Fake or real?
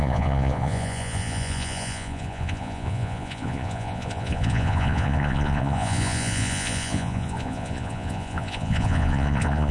fake